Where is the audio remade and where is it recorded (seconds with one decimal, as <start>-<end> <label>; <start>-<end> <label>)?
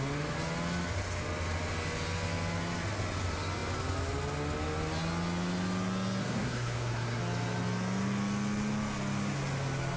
0.0-6.2 recorded; 6.2-7.2 remade; 7.2-10.0 recorded